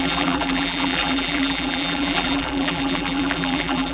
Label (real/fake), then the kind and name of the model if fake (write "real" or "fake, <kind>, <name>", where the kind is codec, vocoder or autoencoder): fake, vocoder, BigVGAN v2